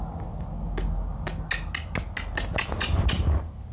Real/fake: real